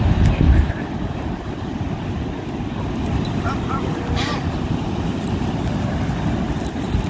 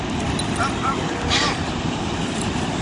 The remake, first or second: first